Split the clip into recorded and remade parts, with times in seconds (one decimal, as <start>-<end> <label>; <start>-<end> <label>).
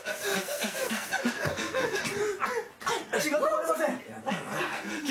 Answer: 0.0-2.0 remade; 2.0-4.2 recorded; 4.2-5.1 remade